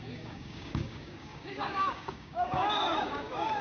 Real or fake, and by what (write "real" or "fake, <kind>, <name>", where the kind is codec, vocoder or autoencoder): fake, codec, DAC